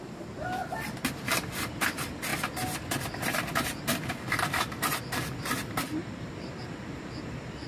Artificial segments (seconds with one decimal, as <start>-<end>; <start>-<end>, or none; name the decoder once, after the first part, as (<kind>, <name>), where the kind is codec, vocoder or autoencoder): 0.0-6.0 (vocoder, BigVGAN v2); 6.6-7.7